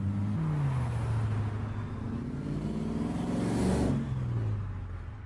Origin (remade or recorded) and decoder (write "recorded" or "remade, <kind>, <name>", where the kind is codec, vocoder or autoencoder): recorded